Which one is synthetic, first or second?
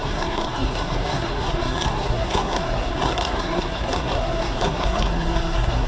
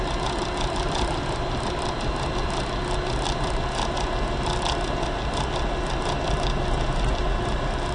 first